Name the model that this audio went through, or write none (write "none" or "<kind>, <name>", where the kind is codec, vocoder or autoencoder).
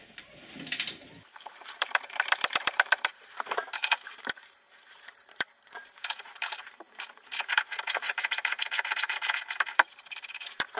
vocoder, BigVGAN v2